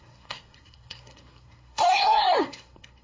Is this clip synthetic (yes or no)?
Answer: yes